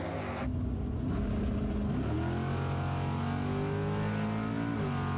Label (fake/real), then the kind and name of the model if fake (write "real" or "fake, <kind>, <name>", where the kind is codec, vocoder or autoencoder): real